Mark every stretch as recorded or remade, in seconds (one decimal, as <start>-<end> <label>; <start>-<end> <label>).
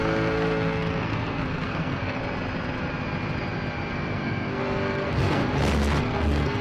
0.0-2.2 remade; 2.2-3.9 recorded; 3.9-5.4 remade; 5.4-6.0 recorded; 6.0-6.6 remade